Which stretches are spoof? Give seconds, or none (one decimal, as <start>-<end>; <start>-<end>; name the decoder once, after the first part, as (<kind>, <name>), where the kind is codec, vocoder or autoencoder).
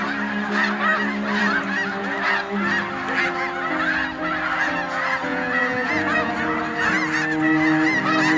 5.3-6.3 (vocoder, Vocos)